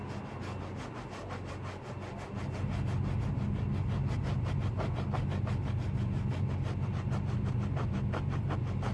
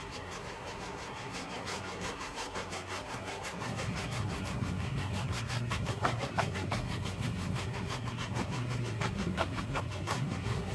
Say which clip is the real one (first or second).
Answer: first